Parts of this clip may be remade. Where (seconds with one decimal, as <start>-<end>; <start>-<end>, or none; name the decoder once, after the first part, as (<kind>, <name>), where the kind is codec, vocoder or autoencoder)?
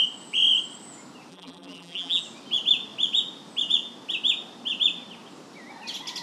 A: 1.3-2.2 (vocoder, BigVGAN v2)